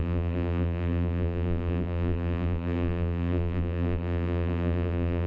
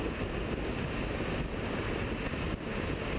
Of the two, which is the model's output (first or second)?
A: first